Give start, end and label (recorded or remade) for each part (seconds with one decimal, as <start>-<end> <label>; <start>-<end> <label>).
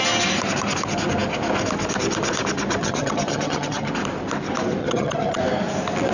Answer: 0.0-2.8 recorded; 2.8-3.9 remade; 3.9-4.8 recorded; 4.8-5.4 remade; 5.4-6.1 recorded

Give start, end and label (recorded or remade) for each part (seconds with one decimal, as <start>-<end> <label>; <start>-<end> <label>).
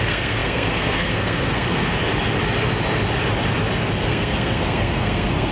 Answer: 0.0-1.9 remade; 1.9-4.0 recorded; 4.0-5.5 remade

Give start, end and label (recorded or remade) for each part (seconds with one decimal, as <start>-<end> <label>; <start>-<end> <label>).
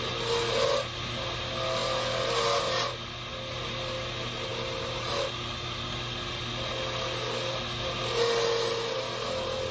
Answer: 0.0-9.7 recorded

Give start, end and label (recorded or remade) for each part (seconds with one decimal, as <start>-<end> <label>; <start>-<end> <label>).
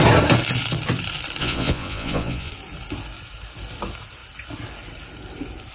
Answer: 0.0-1.4 recorded; 1.4-2.5 remade; 2.5-5.7 recorded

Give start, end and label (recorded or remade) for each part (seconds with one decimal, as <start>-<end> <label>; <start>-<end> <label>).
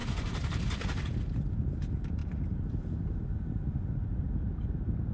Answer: 0.0-1.8 remade; 1.8-5.1 recorded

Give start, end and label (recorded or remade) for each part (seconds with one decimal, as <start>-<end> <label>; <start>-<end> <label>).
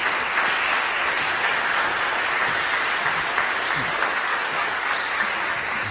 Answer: 0.0-3.9 recorded; 3.9-5.1 remade; 5.1-5.9 recorded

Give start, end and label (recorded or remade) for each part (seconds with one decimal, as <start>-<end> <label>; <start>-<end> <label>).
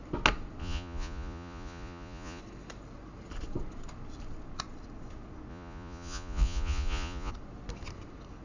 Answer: 0.0-0.6 recorded; 0.6-2.4 remade; 2.4-5.5 recorded; 5.5-7.3 remade; 7.3-8.4 recorded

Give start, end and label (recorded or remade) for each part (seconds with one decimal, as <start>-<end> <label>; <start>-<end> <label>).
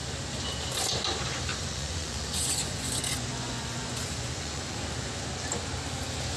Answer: 0.0-1.5 recorded; 1.5-5.3 remade; 5.3-6.4 recorded